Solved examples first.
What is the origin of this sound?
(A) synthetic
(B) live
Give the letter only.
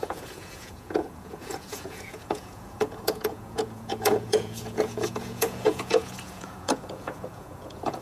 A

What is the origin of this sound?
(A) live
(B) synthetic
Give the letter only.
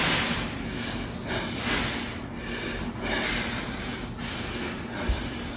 A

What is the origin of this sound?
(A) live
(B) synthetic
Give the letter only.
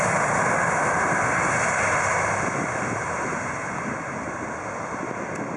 A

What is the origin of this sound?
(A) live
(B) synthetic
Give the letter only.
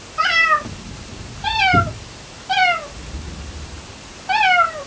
A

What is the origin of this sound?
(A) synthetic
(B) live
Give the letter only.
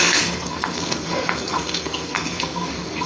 A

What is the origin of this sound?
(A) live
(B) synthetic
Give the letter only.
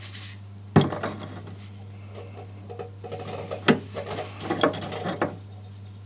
A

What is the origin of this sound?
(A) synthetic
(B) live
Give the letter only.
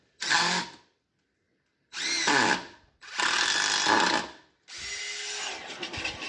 B